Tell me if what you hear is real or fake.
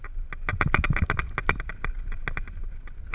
real